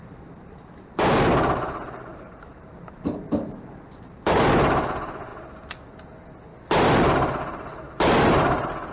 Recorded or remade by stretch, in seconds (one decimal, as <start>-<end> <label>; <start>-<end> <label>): 0.0-2.1 recorded; 2.1-4.4 remade; 4.4-8.9 recorded